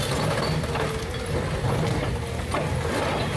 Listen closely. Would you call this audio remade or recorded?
recorded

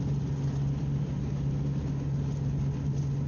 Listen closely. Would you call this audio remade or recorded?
recorded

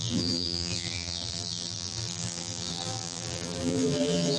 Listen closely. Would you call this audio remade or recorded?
remade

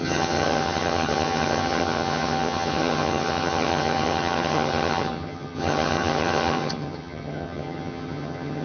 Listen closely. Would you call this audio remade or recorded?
remade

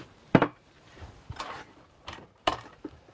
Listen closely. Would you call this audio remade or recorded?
remade